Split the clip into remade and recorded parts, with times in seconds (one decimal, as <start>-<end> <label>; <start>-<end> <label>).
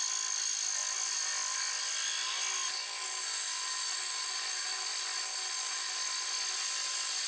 0.0-7.3 recorded